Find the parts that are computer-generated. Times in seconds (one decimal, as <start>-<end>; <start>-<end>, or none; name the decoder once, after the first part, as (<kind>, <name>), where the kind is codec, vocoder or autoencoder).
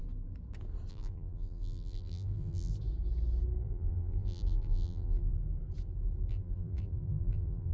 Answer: 0.9-2.7 (vocoder, BigVGAN v2); 3.6-5.3; 6.3-7.7